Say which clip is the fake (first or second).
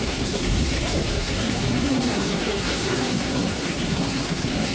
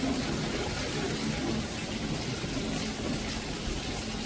first